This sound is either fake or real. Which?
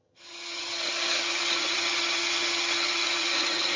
fake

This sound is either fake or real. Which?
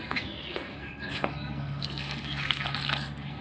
fake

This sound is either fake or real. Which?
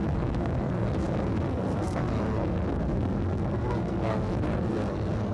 fake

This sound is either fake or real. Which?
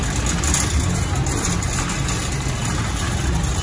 real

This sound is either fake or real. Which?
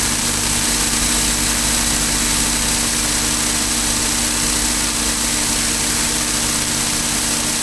real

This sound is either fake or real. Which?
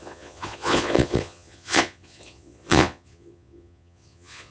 fake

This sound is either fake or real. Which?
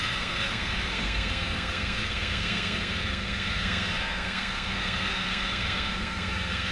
fake